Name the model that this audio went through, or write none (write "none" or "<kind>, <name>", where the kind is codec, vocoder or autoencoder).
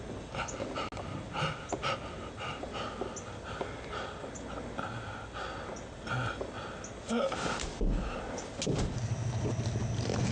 none